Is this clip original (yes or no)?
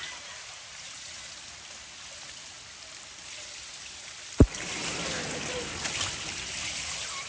yes